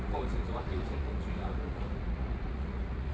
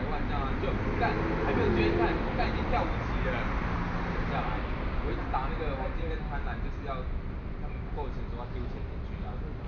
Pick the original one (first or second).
second